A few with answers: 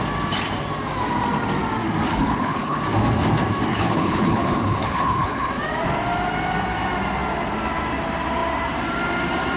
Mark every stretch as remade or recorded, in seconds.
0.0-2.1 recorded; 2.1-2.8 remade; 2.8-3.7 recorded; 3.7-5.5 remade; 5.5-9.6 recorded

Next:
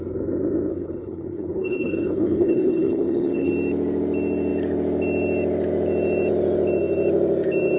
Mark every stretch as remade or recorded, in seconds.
0.0-0.7 recorded; 0.7-3.5 remade; 3.5-7.8 recorded

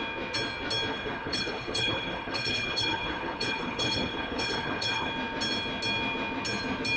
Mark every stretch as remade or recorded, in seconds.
0.0-0.9 recorded; 0.9-5.1 remade; 5.1-7.0 recorded

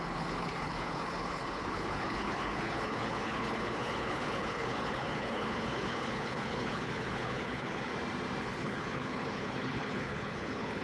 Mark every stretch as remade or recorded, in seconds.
0.0-7.9 remade; 7.9-8.4 recorded; 8.4-10.8 remade

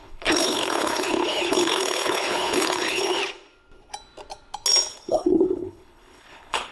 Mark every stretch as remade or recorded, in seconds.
0.0-3.2 remade; 3.2-4.9 recorded; 4.9-6.7 remade